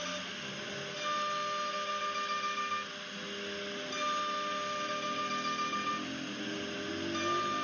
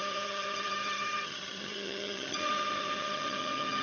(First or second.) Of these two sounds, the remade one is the second